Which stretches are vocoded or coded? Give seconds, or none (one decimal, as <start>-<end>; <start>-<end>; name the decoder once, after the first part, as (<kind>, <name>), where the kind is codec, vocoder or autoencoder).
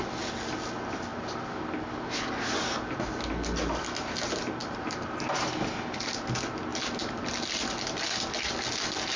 4.6-5.5 (vocoder, BigVGAN v2)